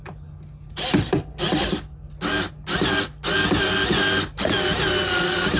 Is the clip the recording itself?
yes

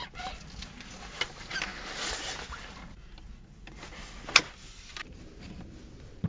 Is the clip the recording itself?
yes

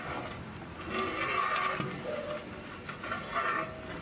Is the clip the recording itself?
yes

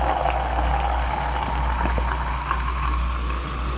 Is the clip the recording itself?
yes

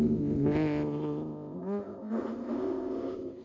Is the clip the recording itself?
no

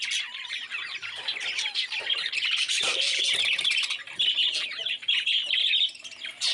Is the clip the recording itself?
yes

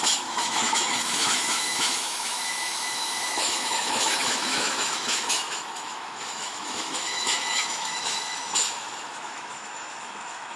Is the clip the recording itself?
no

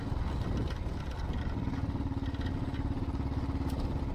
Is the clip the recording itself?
yes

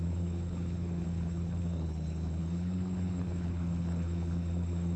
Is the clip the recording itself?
no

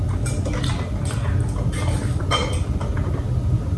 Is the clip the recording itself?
yes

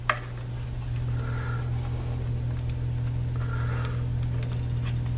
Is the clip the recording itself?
yes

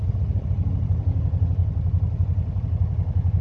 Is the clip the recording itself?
yes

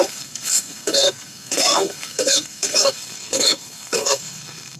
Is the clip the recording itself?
no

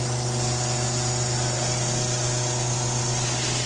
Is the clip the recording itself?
yes